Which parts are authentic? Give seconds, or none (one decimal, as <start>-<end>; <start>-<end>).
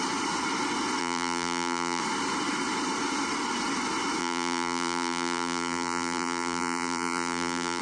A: 0.0-1.0; 2.0-4.2